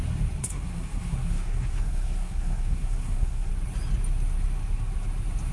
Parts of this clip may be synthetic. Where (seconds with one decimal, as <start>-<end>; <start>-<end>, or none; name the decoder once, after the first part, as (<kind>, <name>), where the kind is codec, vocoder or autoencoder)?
0.4-3.5 (codec, SNAC)